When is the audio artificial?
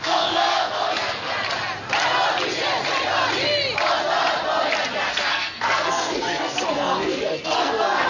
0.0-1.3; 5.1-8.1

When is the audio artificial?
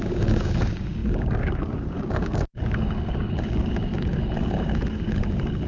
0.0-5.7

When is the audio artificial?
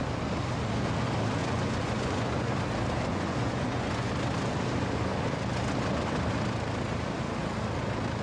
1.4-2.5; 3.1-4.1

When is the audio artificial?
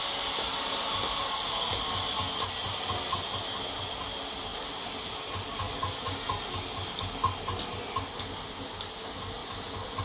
none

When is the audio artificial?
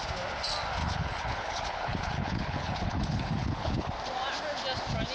0.8-3.9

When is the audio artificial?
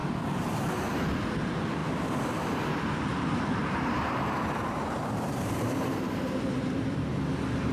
0.0-0.7; 3.1-7.0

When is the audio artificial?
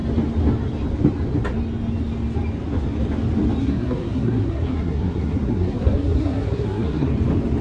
3.6-7.1